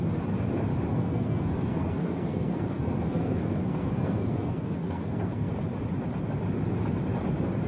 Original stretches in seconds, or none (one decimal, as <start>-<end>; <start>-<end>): 0.0-0.9; 5.5-7.7